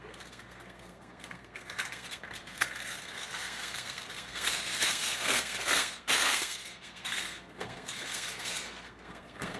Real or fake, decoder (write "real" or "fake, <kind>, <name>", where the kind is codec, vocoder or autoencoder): fake, codec, SNAC